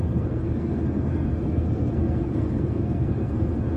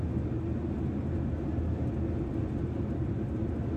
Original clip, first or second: second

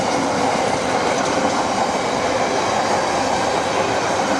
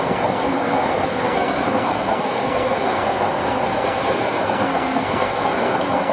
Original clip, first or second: first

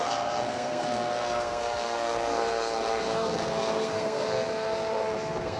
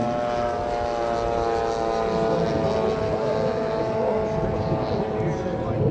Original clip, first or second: second